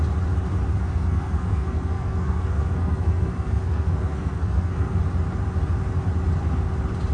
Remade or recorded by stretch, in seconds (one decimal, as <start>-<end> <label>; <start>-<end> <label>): 0.0-0.7 recorded; 0.7-5.0 remade; 5.0-7.1 recorded

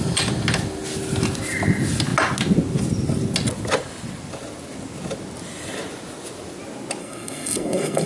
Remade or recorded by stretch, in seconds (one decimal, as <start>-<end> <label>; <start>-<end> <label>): 0.0-7.0 recorded; 7.0-8.1 remade

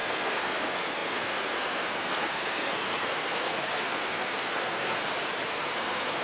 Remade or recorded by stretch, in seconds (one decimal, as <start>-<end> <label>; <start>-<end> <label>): 0.0-5.0 remade; 5.0-5.5 recorded; 5.5-6.2 remade

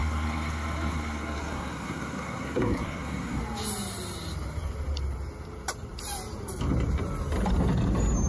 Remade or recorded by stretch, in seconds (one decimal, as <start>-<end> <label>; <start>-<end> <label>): 0.0-3.4 remade; 3.4-8.3 recorded

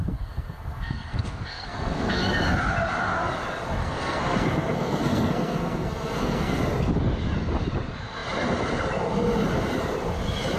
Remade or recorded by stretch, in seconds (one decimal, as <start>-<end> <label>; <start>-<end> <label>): 0.0-2.3 remade; 2.3-3.8 recorded; 3.8-6.6 remade; 6.6-10.6 recorded

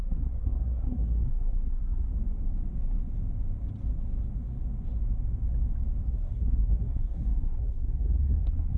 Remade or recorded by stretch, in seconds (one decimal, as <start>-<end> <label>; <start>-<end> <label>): 0.0-2.1 remade; 2.1-6.1 recorded; 6.1-8.8 remade